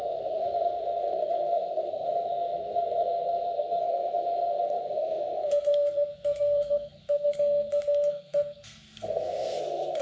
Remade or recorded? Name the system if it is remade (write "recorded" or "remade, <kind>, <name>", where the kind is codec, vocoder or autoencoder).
remade, codec, SNAC